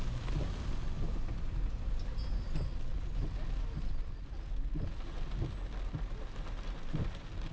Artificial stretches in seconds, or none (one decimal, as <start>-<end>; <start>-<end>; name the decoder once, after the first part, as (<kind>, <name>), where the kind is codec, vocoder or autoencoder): none